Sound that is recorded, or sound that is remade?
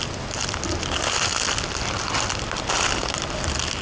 recorded